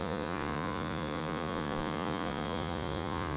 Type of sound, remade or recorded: remade